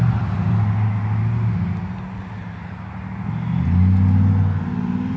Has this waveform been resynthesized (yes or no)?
no